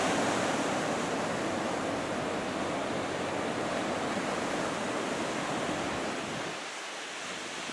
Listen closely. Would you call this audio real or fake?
real